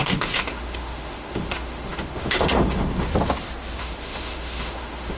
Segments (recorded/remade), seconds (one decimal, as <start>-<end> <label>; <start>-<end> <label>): 0.0-3.1 remade; 3.1-3.8 recorded; 3.8-5.2 remade

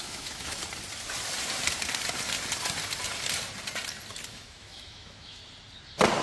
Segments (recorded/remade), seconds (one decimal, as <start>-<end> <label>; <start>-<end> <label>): 0.0-0.6 remade; 0.6-4.3 recorded; 4.3-5.4 remade; 5.4-6.2 recorded

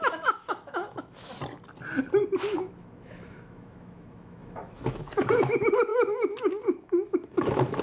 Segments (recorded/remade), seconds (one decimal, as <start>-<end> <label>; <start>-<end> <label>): 0.0-1.4 remade; 1.4-2.4 recorded; 2.4-7.8 remade